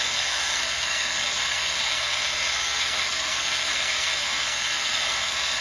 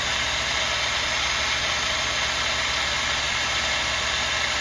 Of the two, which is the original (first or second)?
second